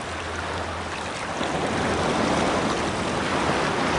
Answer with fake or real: real